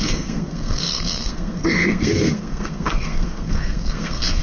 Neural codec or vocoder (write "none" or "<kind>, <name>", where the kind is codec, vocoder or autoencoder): codec, SNAC